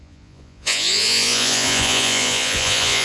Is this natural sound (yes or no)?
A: no